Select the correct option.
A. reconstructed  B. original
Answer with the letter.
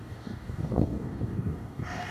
A